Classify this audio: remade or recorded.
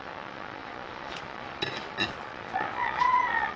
remade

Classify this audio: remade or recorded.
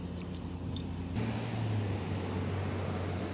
recorded